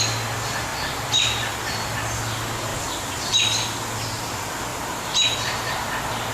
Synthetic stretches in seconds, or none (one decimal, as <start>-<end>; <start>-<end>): 4.7-5.7